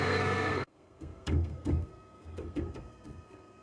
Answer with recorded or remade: remade